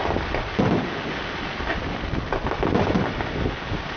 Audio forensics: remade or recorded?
recorded